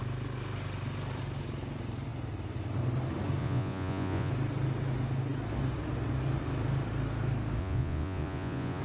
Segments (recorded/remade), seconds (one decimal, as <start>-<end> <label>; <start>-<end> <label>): 0.0-3.4 recorded; 3.4-4.3 remade; 4.3-7.6 recorded; 7.6-8.8 remade

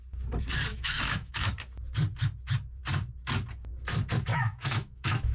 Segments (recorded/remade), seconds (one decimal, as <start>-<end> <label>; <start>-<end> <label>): 0.0-0.7 recorded; 0.7-1.5 remade; 1.5-4.3 recorded; 4.3-5.3 remade

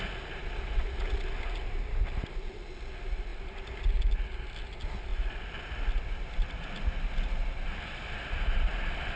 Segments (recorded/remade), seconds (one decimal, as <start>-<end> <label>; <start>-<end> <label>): 0.0-9.2 recorded

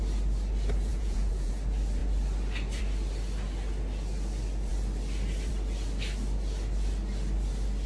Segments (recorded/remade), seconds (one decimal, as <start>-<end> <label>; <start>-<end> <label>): 0.0-0.9 recorded; 0.9-1.5 remade; 1.5-7.9 recorded